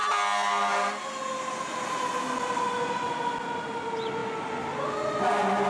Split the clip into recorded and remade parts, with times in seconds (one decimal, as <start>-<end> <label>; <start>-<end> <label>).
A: 0.0-5.7 recorded